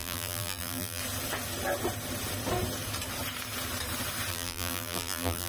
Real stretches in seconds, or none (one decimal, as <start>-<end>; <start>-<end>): 1.0-4.3

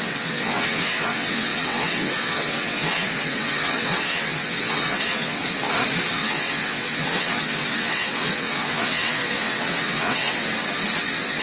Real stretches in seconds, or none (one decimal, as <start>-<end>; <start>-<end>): 5.4-6.1; 10.5-11.0

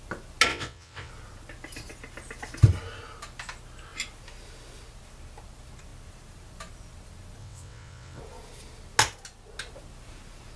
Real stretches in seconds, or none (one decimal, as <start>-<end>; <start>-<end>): 0.0-0.5; 1.1-7.4; 8.2-10.6